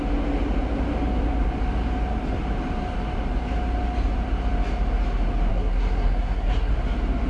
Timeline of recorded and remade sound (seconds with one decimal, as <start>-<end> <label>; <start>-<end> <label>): 0.0-5.5 recorded; 5.5-6.7 remade; 6.7-7.3 recorded